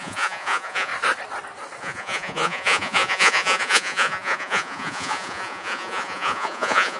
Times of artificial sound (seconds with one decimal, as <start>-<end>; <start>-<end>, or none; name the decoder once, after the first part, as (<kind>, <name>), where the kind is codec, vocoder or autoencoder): 0.0-0.9 (vocoder, Vocos); 1.8-7.0